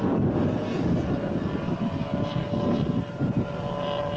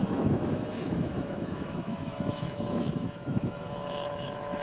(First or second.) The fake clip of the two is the second